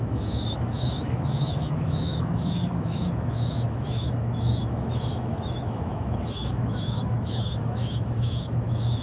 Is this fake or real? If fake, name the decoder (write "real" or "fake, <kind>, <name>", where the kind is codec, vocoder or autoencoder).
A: fake, autoencoder, DAC-VAE